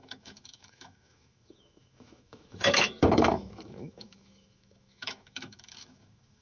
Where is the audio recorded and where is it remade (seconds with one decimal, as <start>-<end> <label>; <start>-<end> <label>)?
0.0-6.4 remade